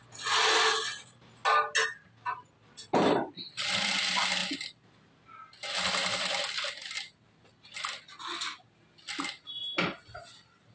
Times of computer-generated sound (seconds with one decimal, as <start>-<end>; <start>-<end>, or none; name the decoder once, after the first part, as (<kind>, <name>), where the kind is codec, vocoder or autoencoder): none